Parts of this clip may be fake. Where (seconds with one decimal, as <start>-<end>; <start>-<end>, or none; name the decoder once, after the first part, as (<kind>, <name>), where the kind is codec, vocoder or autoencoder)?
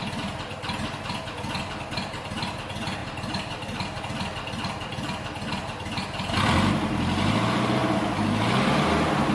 3.0-4.0 (vocoder, BigVGAN v2)